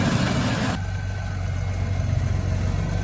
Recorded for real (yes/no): yes